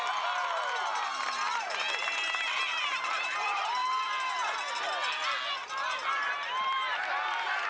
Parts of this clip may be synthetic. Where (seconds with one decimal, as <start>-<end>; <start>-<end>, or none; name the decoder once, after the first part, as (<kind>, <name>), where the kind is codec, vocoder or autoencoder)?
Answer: none